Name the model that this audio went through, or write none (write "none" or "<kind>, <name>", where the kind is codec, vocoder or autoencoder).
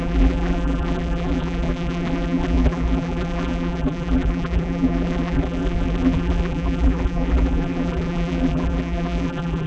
vocoder, BigVGAN v2